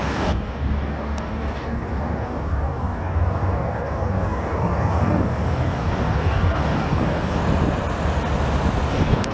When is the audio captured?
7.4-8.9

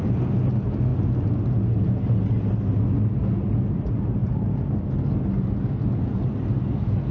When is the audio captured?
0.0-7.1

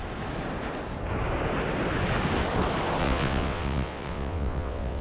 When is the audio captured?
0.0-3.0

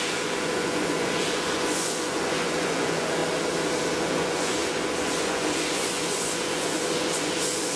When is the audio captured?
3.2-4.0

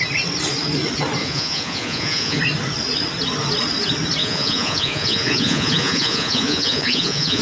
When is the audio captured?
0.0-1.2; 2.4-4.2